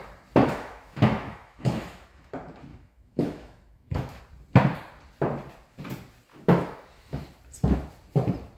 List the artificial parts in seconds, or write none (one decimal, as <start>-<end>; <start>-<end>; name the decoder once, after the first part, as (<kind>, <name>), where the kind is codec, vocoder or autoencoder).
0.4-2.3 (autoencoder, DAC-VAE); 2.7-4.2; 6.3-7.2